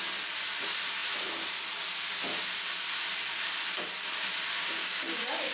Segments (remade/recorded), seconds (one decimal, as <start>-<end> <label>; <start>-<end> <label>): 0.0-4.8 recorded; 4.8-5.5 remade